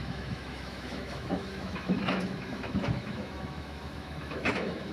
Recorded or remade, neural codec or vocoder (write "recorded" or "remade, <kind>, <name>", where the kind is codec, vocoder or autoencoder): remade, autoencoder, DAC-VAE